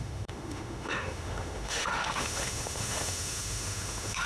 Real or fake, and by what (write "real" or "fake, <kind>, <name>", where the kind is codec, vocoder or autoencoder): fake, autoencoder, DAC-VAE